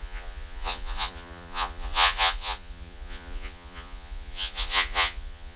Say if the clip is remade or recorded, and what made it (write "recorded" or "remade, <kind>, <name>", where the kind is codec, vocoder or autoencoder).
remade, vocoder, Vocos